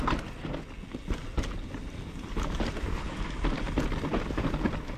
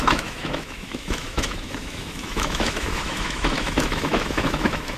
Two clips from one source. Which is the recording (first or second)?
first